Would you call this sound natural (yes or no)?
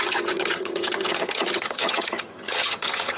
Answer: no